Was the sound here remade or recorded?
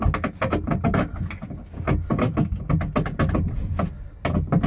recorded